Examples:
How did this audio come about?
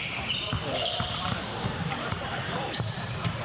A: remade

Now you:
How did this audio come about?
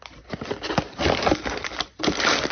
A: recorded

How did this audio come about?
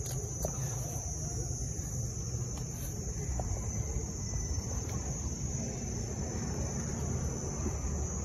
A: recorded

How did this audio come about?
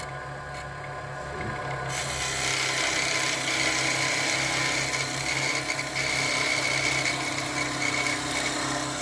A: recorded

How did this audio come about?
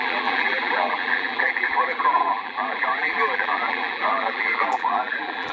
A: remade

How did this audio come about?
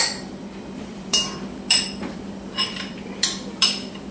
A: remade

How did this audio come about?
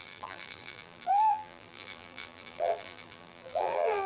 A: remade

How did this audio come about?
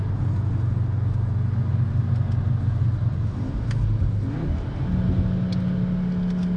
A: recorded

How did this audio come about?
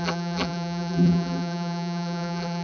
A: remade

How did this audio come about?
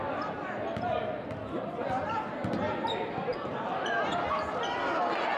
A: recorded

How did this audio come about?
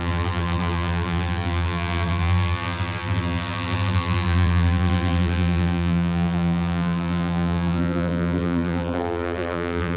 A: remade